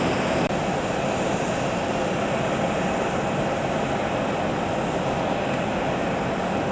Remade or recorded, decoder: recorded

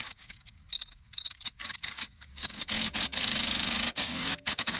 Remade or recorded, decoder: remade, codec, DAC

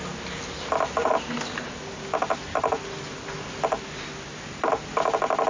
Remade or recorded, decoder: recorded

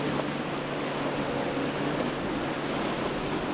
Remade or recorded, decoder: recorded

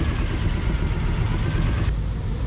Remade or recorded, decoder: recorded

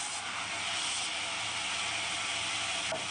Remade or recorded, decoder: recorded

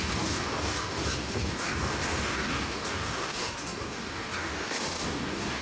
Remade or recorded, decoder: remade, codec, DAC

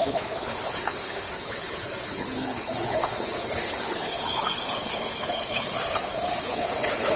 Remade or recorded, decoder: remade, codec, HILCodec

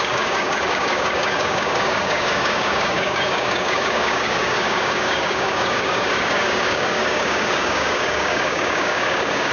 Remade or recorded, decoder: remade, codec, DAC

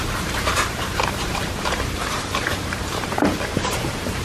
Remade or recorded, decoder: remade, vocoder, BigVGAN v2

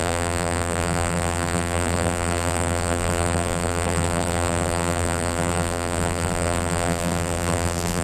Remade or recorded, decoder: remade, vocoder, BigVGAN v2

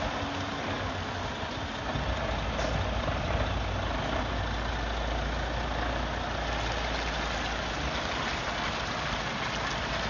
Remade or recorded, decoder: recorded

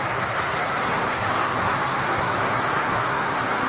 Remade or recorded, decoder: remade, codec, SNAC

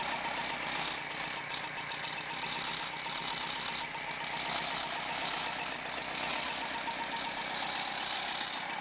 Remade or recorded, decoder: recorded